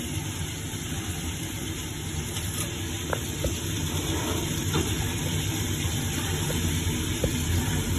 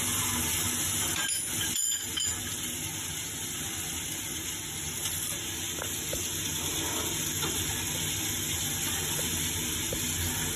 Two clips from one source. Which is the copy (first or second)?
first